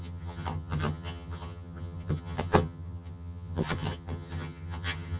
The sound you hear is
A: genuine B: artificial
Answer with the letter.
B